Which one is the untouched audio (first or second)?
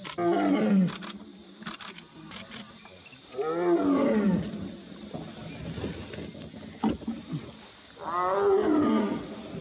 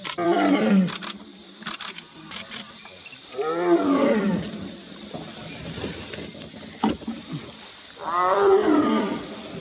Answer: first